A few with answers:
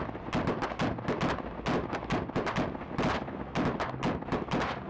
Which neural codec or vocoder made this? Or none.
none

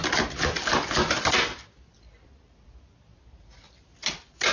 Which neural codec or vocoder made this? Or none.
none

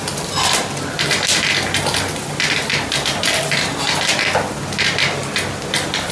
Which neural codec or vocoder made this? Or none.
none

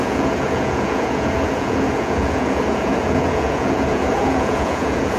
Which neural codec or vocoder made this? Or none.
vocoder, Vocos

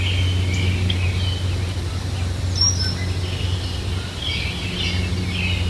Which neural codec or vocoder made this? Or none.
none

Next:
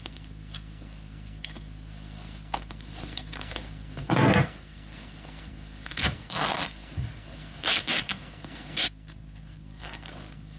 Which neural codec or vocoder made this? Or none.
codec, SNAC